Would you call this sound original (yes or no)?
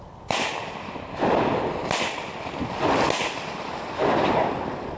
yes